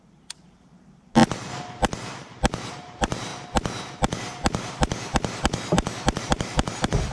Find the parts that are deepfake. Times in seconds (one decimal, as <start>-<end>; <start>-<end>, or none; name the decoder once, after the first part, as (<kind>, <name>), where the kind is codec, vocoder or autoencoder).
0.0-1.2 (vocoder, BigVGAN v2); 2.7-3.3; 6.2-7.1